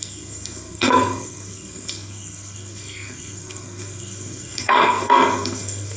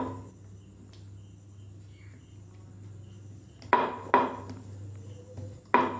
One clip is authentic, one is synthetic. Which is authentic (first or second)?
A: second